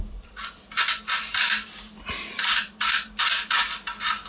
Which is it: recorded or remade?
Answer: remade